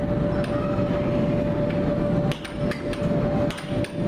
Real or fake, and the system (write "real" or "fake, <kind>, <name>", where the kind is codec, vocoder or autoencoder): real